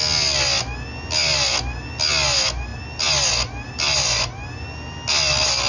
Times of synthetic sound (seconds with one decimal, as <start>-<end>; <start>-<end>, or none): none